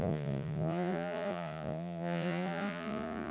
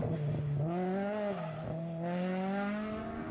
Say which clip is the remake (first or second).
first